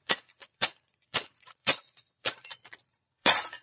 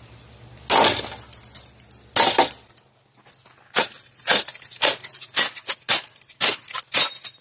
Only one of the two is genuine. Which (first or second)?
second